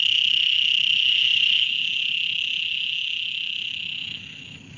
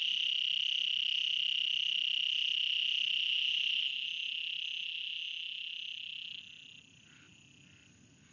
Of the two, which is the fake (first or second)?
first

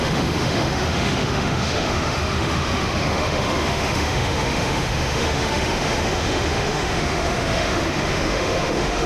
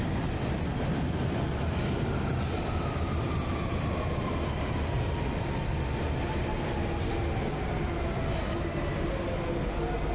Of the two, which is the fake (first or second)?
first